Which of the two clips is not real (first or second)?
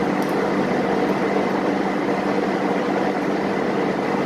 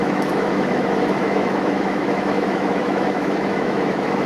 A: second